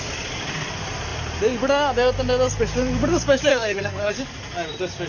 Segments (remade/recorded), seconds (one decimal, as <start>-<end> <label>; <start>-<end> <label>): 0.0-3.5 recorded; 3.5-4.1 remade; 4.1-5.1 recorded